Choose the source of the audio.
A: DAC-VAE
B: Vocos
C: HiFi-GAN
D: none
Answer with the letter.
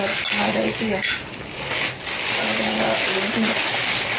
D